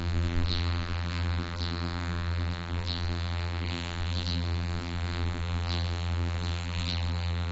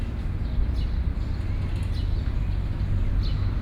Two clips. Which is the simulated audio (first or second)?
first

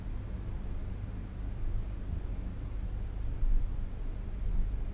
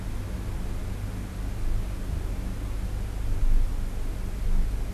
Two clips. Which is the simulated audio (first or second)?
first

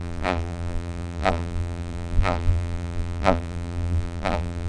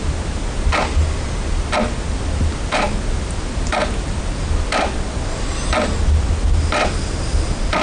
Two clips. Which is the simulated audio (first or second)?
first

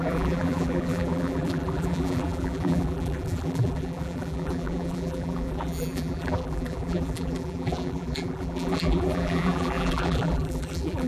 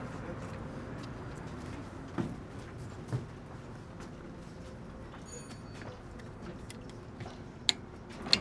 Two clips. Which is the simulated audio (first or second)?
first